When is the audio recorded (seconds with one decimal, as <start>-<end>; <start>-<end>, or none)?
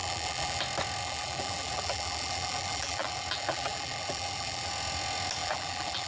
0.6-1.0; 4.7-5.4